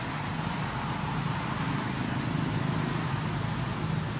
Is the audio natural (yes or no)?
yes